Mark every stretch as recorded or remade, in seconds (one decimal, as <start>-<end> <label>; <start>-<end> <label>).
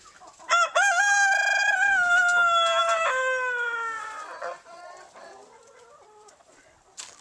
0.0-4.0 recorded; 4.0-4.8 remade; 4.8-7.2 recorded